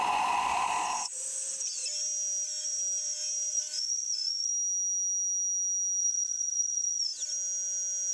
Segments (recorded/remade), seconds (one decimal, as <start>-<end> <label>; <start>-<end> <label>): 0.0-1.8 remade; 1.8-3.5 recorded; 3.5-4.5 remade; 4.5-6.0 recorded; 6.0-7.1 remade; 7.1-8.1 recorded